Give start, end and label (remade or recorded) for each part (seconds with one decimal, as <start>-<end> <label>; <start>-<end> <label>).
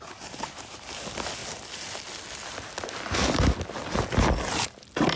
0.0-5.2 recorded